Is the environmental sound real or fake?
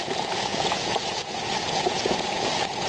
fake